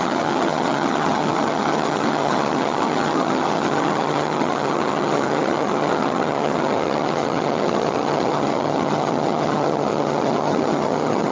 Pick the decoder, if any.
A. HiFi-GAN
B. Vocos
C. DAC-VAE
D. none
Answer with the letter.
A